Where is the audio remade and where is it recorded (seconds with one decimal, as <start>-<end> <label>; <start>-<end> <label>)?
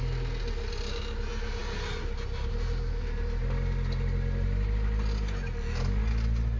0.0-6.6 recorded